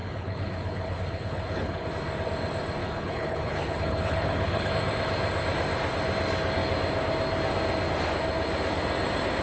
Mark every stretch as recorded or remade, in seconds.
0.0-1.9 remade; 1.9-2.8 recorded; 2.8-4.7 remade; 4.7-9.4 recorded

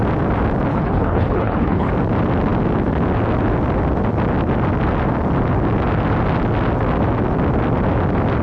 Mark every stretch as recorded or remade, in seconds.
0.0-0.7 recorded; 0.7-1.9 remade; 1.9-8.4 recorded